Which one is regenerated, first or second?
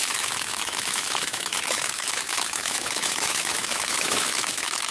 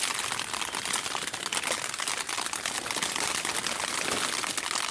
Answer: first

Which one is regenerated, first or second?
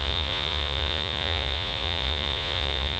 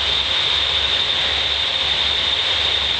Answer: first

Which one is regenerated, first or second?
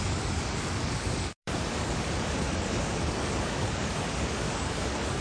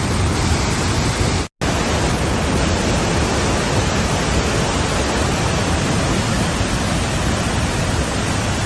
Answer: first